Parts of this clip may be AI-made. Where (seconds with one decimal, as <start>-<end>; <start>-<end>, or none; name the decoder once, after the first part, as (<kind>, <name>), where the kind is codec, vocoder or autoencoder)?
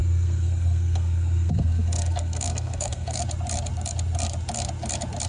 0.0-3.2 (codec, SNAC)